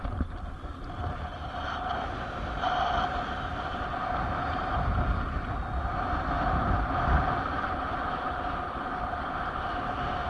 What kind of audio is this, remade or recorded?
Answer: recorded